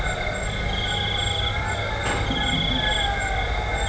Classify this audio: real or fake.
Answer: real